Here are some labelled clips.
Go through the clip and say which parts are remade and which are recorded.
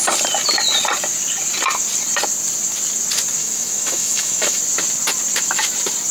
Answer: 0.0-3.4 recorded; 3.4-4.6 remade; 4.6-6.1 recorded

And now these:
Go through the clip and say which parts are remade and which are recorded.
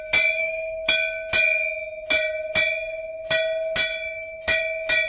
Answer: 0.0-0.4 recorded; 0.4-0.9 remade; 0.9-5.1 recorded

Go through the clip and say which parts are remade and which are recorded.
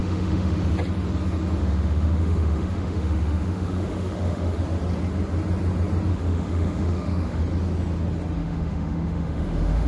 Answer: 0.0-0.6 remade; 0.6-1.6 recorded; 1.6-4.6 remade; 4.6-6.1 recorded; 6.1-7.4 remade; 7.4-8.4 recorded; 8.4-9.9 remade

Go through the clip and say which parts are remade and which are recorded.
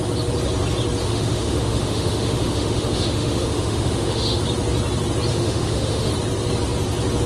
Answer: 0.0-1.0 recorded; 1.0-4.4 remade; 4.4-5.3 recorded; 5.3-6.1 remade; 6.1-7.3 recorded